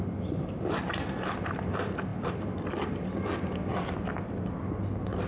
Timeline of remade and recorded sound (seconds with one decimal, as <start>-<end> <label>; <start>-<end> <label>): 0.0-5.3 recorded